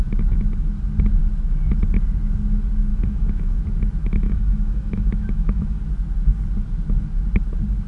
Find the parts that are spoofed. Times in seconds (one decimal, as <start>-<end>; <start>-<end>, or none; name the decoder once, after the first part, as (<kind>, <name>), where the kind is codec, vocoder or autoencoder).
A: 2.9-3.6 (autoencoder, DAC-VAE); 4.0-5.8